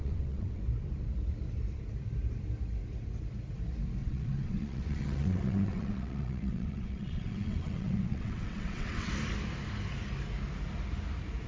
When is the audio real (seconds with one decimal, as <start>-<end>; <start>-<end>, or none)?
0.6-4.0; 9.1-11.5